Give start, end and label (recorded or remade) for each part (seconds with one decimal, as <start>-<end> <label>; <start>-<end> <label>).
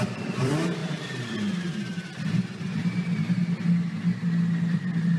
0.0-2.8 remade; 2.8-4.7 recorded; 4.7-5.2 remade